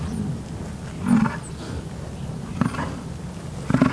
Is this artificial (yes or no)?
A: no